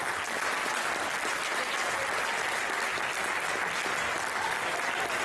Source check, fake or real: real